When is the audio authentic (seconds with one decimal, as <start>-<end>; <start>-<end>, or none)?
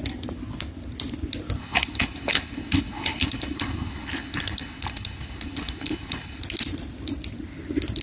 0.0-1.6; 6.4-8.0